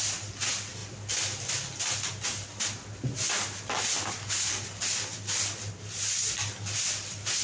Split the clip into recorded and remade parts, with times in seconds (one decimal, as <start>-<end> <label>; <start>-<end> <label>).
0.0-7.4 recorded